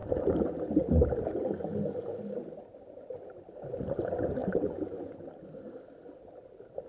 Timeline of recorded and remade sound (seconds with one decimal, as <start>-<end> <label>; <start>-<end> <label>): 0.0-4.4 recorded; 4.4-5.0 remade; 5.0-6.9 recorded